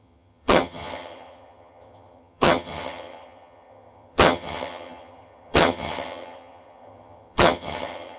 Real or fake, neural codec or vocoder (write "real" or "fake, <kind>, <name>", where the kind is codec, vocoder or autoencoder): fake, vocoder, HiFi-GAN